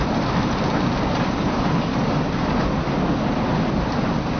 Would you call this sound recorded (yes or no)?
yes